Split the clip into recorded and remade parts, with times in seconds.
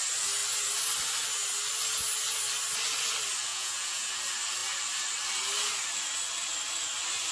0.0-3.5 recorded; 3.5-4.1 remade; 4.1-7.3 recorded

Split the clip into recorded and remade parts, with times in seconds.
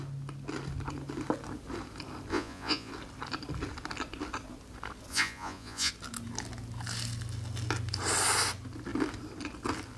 0.0-2.3 recorded; 2.3-2.9 remade; 2.9-5.1 recorded; 5.1-5.9 remade; 5.9-10.0 recorded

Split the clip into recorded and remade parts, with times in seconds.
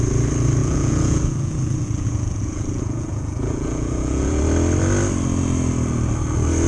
0.0-0.6 recorded; 0.6-4.4 remade; 4.4-6.7 recorded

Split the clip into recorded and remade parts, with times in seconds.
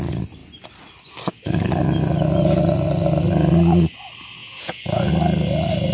0.0-4.4 recorded; 4.4-5.1 remade; 5.1-5.9 recorded